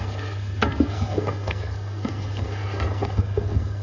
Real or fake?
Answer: fake